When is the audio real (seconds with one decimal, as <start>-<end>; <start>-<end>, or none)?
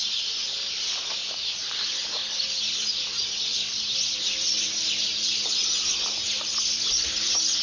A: 0.0-7.6